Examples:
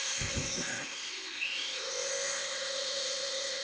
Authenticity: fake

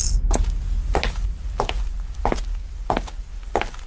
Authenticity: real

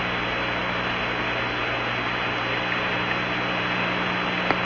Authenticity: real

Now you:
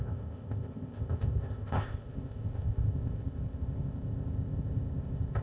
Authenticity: fake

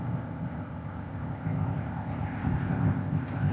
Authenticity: fake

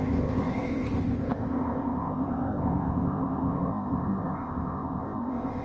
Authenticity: fake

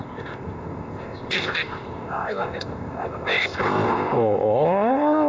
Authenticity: fake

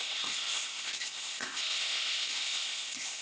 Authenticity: fake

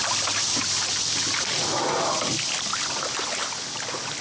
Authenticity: real